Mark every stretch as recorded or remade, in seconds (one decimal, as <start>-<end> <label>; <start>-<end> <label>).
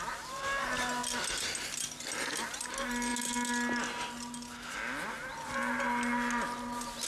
0.0-7.1 recorded